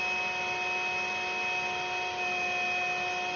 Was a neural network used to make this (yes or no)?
no